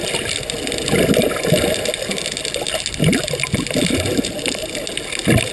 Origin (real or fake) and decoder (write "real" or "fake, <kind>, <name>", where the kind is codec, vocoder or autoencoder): real